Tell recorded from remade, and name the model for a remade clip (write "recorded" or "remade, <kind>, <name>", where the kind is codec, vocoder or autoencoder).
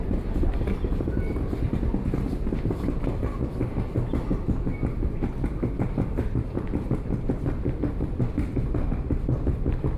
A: recorded